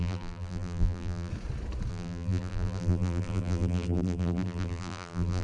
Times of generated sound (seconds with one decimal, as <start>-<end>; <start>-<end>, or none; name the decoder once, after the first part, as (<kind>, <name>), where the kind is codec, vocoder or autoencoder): 0.0-1.3 (vocoder, BigVGAN v2); 1.9-5.4

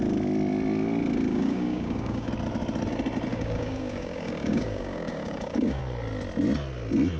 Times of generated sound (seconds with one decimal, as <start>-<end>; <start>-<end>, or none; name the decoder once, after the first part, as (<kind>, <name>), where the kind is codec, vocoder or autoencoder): 1.3-2.3 (codec, DAC); 3.3-5.8

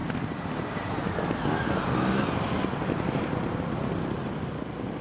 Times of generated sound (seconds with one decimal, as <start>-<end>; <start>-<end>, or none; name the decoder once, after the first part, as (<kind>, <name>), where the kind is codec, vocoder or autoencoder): none